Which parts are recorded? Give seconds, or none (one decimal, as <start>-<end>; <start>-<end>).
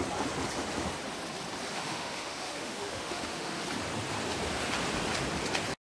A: 0.0-1.7; 3.6-5.9